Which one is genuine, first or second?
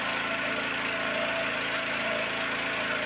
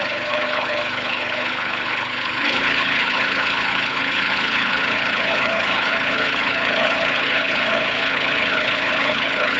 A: first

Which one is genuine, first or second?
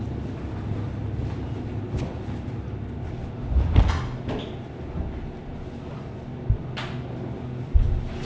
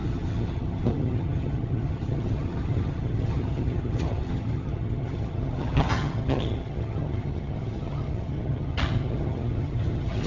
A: first